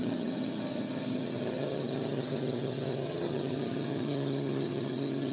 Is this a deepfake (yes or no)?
yes